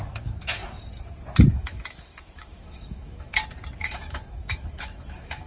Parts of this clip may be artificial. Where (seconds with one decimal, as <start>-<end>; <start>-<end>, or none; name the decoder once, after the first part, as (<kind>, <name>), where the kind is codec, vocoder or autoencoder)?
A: 0.0-0.6 (autoencoder, DAC-VAE); 1.5-3.3; 3.8-5.5